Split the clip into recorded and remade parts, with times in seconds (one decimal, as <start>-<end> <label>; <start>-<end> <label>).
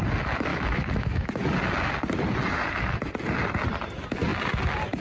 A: 0.0-0.5 recorded; 0.5-1.3 remade; 1.3-5.0 recorded